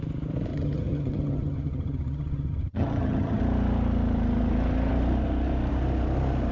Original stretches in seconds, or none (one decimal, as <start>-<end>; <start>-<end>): 0.0-0.5; 3.4-6.5

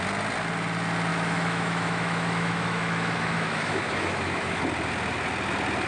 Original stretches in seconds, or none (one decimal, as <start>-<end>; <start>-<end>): 0.0-1.1; 4.6-5.9

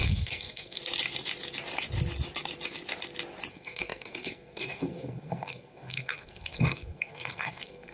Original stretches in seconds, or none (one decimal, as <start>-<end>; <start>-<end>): 0.8-3.5

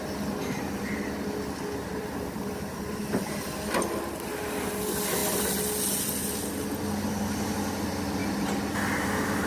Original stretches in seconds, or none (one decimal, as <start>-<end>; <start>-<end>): 0.0-1.8; 3.0-9.5